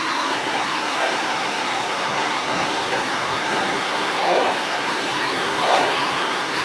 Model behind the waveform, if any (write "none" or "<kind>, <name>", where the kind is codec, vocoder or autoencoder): codec, SNAC